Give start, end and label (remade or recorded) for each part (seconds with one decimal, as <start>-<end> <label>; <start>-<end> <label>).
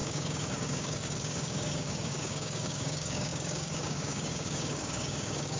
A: 0.0-5.6 remade